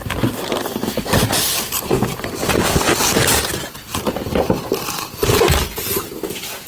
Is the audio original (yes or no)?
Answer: yes